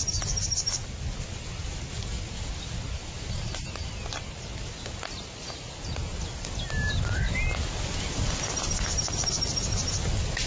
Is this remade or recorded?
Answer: recorded